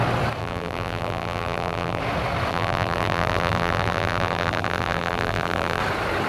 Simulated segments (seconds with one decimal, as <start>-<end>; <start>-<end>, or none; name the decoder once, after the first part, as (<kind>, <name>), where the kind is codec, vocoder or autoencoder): 0.4-2.0 (vocoder, BigVGAN v2); 2.5-5.8